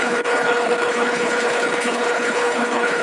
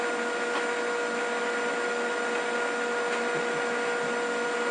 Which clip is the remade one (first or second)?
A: first